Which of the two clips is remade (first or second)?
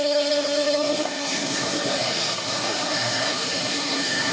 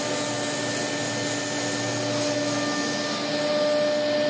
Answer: first